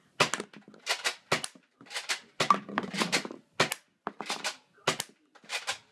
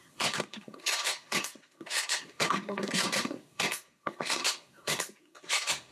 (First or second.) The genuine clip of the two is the first